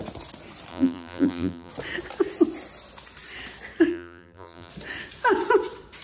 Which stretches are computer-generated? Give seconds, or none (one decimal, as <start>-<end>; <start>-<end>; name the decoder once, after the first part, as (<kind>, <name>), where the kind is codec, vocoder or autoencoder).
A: 0.7-1.7 (vocoder, BigVGAN v2); 3.9-4.7